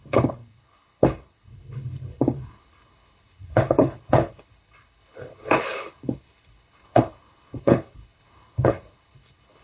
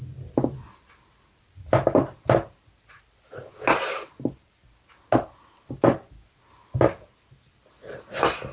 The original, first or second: second